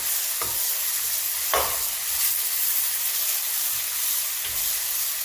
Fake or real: real